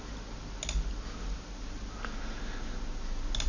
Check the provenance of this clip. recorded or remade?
recorded